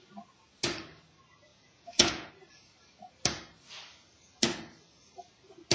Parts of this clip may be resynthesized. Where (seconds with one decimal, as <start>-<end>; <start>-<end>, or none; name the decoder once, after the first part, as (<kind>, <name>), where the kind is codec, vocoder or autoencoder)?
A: 1.5-2.3 (vocoder, Vocos)